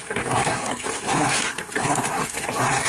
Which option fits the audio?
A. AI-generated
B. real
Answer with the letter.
A